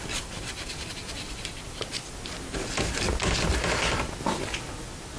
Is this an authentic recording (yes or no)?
yes